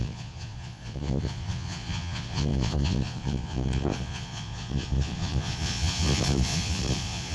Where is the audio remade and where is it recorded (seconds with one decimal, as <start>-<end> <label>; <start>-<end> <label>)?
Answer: 0.0-7.3 remade